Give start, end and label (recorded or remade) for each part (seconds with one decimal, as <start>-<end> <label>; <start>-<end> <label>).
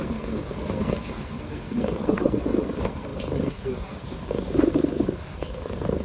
0.0-6.0 remade